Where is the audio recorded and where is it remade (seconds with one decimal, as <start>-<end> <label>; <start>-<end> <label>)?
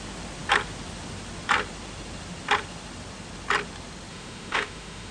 0.0-4.1 recorded; 4.1-5.1 remade